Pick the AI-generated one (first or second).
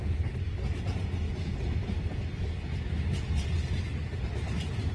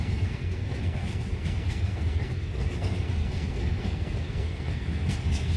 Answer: second